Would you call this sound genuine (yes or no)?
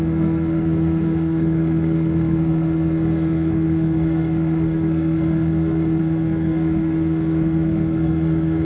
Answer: no